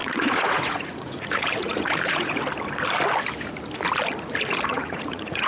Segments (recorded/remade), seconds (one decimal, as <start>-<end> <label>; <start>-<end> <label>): 0.0-2.4 remade; 2.4-4.7 recorded; 4.7-5.5 remade